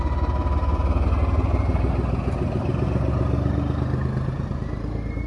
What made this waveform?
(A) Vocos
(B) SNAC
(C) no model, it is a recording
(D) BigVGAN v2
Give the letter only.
C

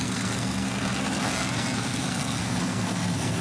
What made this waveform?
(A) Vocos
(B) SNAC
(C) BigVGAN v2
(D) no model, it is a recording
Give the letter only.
B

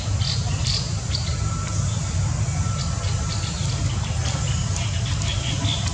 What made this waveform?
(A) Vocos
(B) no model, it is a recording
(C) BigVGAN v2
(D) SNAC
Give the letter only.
B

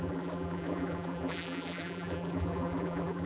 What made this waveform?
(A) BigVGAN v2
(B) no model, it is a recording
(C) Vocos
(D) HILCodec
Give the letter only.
A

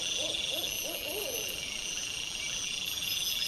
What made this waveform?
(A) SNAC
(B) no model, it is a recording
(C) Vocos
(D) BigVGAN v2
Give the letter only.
D